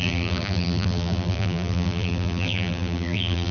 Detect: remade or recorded remade